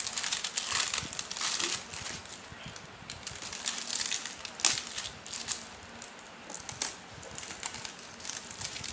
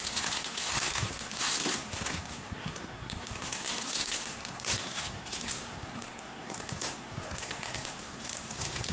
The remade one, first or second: second